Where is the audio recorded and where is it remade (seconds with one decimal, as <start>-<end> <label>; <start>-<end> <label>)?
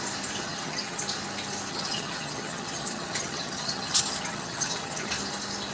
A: 0.0-0.4 recorded; 0.4-1.0 remade; 1.0-1.7 recorded; 1.7-5.1 remade; 5.1-5.7 recorded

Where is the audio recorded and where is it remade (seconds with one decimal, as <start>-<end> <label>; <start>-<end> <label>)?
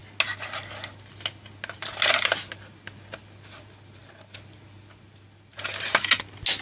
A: 0.0-6.6 recorded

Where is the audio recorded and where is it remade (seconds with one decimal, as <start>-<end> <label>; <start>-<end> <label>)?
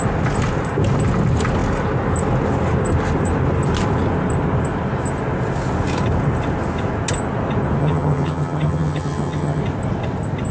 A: 0.0-7.8 recorded; 7.8-9.6 remade; 9.6-10.5 recorded